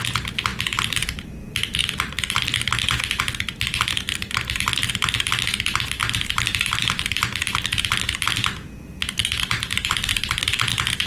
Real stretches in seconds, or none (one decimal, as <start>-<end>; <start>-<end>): 0.0-6.0; 7.2-9.2; 10.6-11.1